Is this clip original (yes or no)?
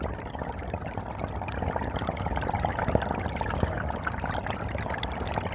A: yes